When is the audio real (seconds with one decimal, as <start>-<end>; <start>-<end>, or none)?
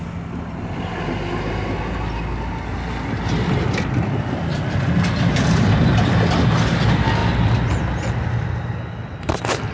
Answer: 0.0-9.7